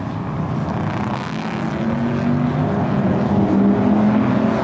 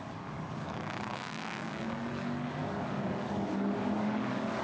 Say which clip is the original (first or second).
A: first